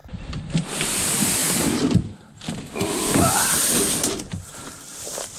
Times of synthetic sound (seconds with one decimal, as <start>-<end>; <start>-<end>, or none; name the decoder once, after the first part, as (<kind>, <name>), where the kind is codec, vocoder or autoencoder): 0.7-1.4 (vocoder, BigVGAN v2); 4.6-5.4